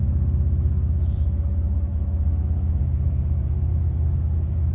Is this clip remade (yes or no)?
yes